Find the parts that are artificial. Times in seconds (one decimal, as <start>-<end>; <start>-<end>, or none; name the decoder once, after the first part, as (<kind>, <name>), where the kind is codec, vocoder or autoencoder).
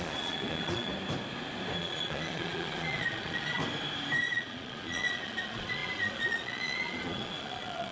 0.0-0.9 (vocoder, Vocos); 1.8-3.6; 4.3-7.9